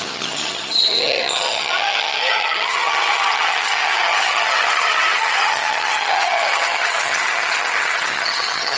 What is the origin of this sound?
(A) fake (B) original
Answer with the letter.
A